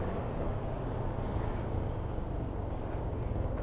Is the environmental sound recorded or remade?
remade